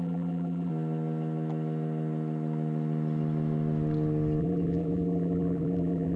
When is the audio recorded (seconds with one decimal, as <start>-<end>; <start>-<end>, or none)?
0.7-4.4